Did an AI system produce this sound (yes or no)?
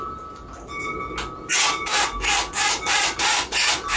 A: no